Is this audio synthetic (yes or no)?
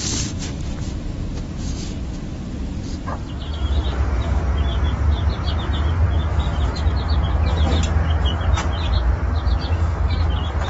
no